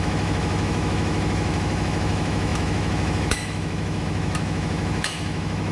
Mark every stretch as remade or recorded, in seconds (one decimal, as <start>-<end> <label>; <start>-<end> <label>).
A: 0.0-5.7 remade